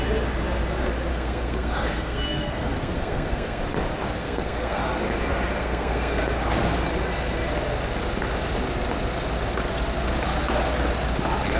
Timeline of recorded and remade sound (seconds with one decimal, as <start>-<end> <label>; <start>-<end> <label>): 0.0-1.1 recorded; 1.1-3.6 remade; 3.6-4.2 recorded; 4.2-4.8 remade; 4.8-5.6 recorded; 5.6-6.2 remade; 6.2-11.6 recorded